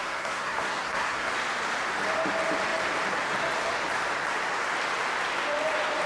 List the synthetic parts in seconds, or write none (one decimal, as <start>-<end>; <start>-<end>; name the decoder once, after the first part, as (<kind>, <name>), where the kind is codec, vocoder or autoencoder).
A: 0.0-1.3 (codec, SNAC)